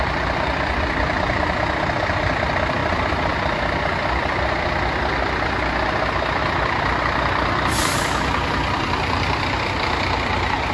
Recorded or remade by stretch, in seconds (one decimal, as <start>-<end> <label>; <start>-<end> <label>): 0.0-10.7 remade